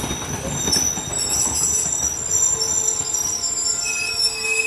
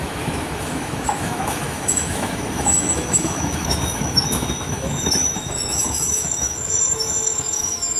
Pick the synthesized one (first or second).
second